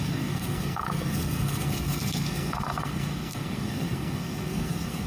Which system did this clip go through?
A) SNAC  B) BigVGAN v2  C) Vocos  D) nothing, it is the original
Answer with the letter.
A